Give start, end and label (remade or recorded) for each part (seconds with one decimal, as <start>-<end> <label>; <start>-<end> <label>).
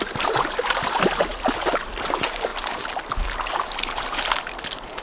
0.0-5.0 recorded